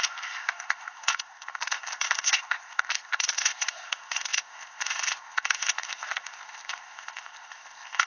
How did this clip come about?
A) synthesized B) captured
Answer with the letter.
A